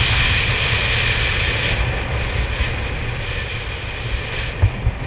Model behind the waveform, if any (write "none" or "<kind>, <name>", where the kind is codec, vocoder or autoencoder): none